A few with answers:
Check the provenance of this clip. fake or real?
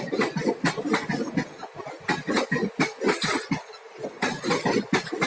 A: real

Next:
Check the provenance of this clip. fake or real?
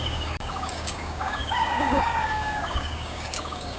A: fake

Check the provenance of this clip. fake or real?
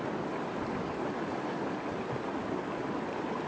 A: real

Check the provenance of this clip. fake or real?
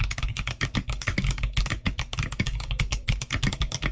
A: fake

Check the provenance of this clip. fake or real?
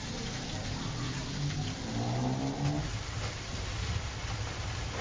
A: real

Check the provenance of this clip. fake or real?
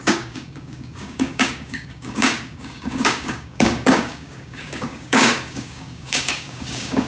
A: fake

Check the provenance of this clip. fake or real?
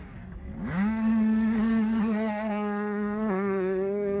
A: fake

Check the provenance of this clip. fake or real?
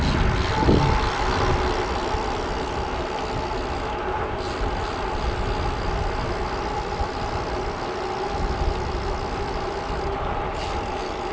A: real